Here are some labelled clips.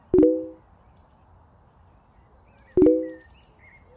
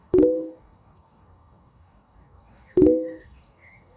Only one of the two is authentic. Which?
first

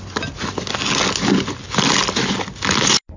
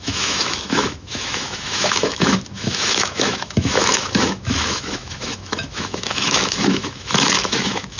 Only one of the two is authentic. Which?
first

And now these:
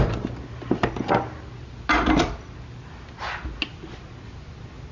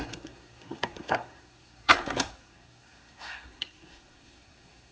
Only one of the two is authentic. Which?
first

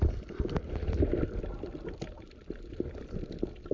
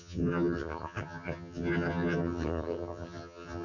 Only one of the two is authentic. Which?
first